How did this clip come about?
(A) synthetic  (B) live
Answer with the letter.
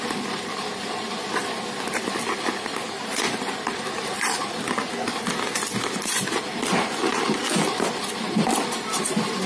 B